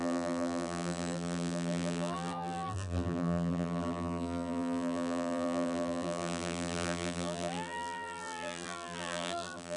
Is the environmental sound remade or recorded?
remade